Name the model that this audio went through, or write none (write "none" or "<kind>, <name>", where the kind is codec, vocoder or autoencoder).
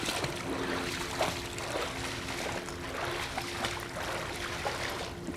none